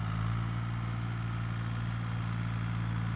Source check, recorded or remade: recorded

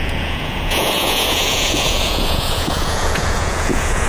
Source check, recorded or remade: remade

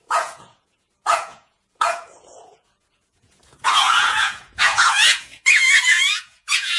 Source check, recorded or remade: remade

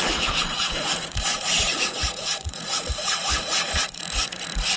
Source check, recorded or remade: remade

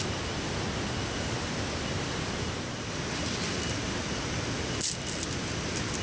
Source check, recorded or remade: recorded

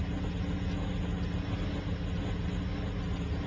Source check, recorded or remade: recorded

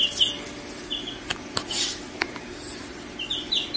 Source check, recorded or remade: recorded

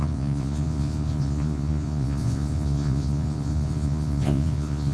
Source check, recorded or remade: remade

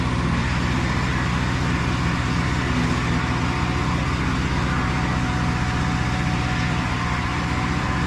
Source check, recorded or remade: recorded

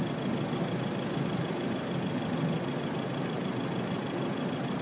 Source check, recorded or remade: recorded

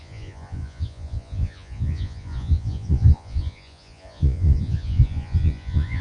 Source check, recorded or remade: remade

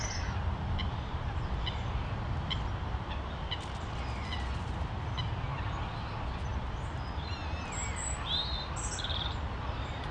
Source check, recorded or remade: recorded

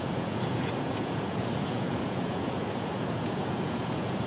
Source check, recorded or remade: remade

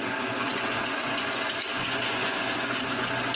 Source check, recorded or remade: remade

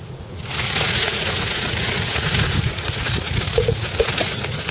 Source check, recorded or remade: remade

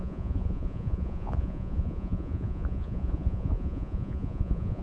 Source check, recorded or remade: remade